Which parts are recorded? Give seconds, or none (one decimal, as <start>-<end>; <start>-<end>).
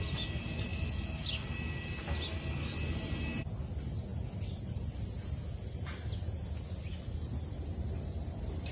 0.0-8.7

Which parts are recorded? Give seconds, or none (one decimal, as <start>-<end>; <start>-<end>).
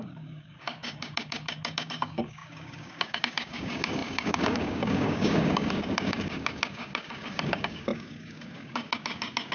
none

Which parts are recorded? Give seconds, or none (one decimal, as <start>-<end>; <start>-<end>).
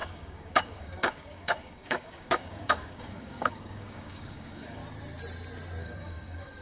4.8-5.8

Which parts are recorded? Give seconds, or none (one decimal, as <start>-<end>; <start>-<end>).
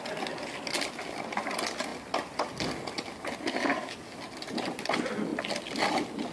0.0-3.7; 4.2-6.3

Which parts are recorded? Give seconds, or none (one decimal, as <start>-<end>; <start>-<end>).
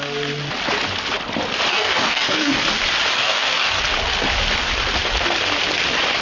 0.0-1.7; 2.6-3.1; 3.8-6.2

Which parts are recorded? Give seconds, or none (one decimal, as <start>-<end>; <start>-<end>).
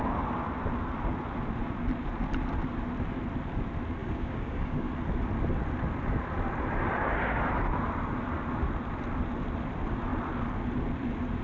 0.0-4.0; 4.9-11.4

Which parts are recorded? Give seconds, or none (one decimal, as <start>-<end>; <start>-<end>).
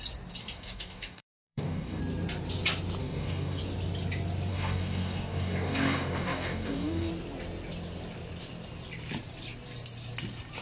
0.0-0.4; 2.0-3.0; 3.6-4.5; 7.1-10.6